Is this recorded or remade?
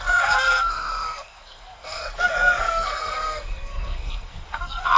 remade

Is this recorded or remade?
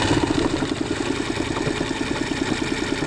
recorded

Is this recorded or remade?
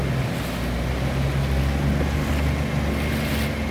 recorded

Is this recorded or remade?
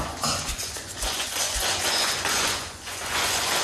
remade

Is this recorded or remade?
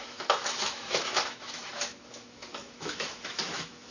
remade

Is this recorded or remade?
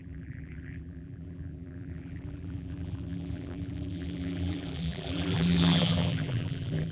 remade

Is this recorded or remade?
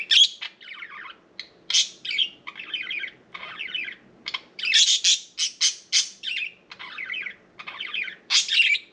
recorded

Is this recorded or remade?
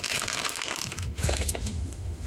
remade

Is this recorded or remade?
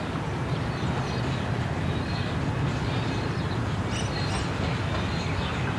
recorded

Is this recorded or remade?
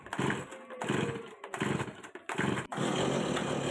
recorded